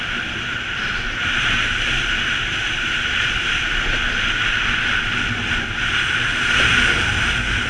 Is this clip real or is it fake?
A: real